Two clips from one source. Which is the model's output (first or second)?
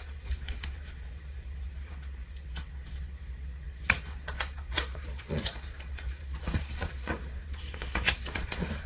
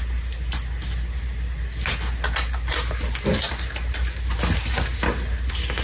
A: first